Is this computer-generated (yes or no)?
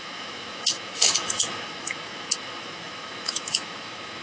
yes